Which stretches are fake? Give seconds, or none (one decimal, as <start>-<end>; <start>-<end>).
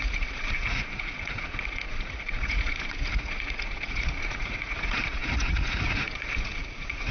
0.0-7.1